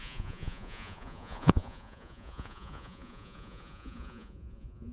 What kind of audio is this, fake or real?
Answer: fake